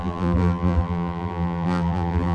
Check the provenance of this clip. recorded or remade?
remade